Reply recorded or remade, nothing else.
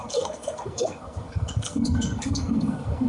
remade